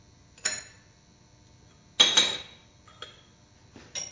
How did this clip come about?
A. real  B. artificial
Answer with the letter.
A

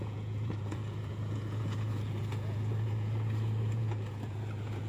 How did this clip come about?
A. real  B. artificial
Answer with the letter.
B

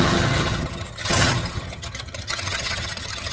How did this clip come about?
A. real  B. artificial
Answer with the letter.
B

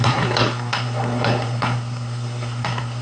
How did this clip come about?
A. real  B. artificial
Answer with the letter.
B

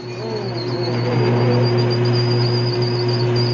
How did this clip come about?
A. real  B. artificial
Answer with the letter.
A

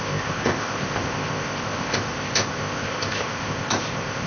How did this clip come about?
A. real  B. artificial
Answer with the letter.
B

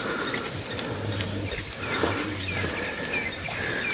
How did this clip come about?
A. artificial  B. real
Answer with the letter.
B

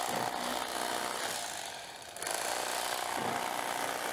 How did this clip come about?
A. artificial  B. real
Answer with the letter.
B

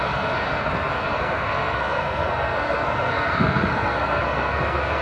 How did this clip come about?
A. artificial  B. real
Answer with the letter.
A